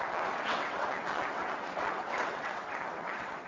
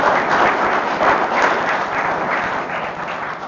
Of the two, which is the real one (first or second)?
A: second